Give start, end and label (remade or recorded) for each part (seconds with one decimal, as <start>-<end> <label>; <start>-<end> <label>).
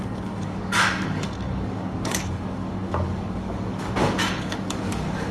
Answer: 0.0-5.3 remade